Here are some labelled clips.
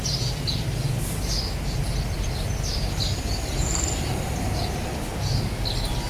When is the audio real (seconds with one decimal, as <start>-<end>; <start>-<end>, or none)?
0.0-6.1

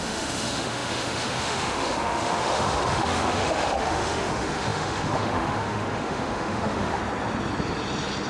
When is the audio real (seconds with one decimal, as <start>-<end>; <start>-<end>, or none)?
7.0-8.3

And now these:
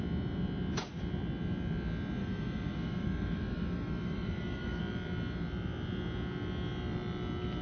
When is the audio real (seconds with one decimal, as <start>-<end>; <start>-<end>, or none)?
0.0-2.2; 4.8-7.6